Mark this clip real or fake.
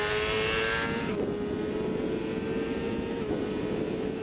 real